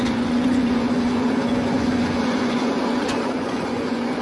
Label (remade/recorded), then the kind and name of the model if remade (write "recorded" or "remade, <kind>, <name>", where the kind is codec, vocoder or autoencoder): remade, vocoder, Vocos